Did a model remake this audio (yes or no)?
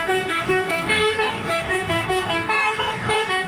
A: yes